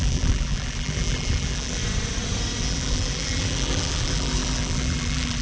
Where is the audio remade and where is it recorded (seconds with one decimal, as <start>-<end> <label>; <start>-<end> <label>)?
0.0-1.8 remade; 1.8-2.6 recorded; 2.6-5.4 remade